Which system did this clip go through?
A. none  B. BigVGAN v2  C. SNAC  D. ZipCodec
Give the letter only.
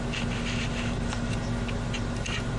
A